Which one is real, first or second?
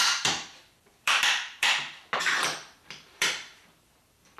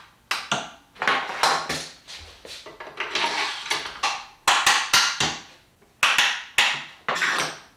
second